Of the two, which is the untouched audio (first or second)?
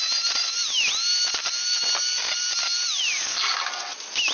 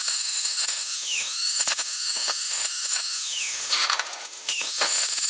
first